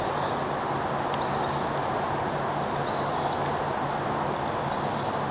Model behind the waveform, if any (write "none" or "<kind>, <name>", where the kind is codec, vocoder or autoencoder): none